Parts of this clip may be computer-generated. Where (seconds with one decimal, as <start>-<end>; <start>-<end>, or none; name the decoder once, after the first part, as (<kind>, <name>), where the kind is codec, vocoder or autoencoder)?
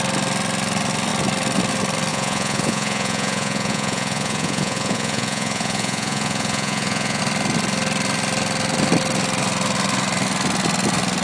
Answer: 2.1-7.2 (vocoder, Vocos)